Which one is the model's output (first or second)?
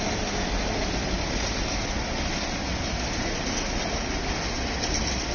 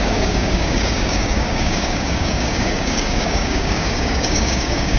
second